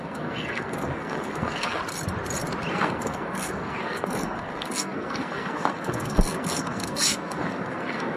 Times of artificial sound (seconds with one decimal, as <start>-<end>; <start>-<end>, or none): 0.0-1.8; 2.7-8.2